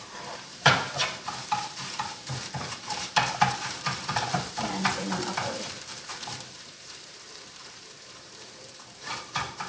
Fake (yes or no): yes